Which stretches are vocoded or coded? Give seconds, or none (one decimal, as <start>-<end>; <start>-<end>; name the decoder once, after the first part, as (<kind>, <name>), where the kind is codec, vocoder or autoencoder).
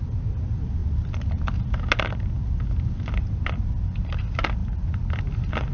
none